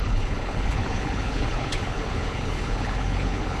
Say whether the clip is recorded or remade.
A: remade